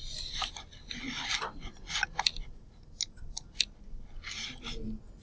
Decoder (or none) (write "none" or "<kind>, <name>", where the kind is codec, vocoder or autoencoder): none